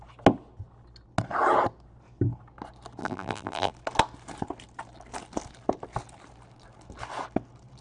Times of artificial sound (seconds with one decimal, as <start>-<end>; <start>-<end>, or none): 3.0-3.7